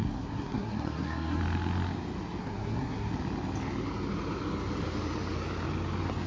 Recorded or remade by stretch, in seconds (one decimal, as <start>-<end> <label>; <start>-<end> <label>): 0.0-1.4 remade; 1.4-2.4 recorded; 2.4-3.1 remade; 3.1-6.3 recorded